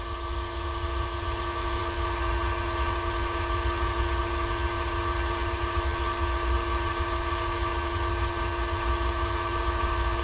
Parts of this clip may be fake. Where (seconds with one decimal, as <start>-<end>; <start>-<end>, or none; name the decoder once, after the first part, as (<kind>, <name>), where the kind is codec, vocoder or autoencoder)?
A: 0.0-10.2 (vocoder, HiFi-GAN)